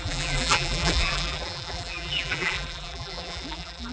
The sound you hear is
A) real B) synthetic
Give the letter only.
B